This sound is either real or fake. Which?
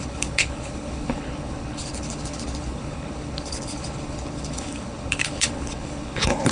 fake